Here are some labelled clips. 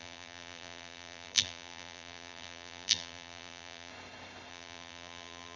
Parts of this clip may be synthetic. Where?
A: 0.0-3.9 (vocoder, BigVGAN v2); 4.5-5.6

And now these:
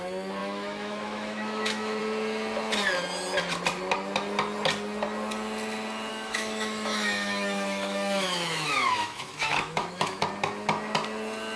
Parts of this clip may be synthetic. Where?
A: 0.4-2.0 (autoencoder, DAC-VAE); 6.1-10.2

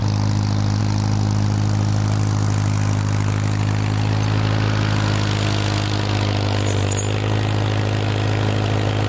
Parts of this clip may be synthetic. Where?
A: none